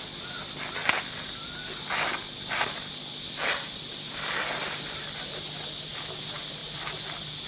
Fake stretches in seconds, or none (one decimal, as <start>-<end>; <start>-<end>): none